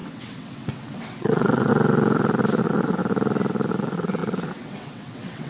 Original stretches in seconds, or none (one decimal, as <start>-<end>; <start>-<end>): 1.7-2.6; 3.0-3.8